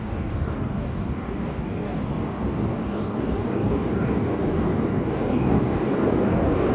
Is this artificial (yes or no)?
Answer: yes